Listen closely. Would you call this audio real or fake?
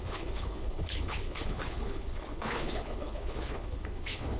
fake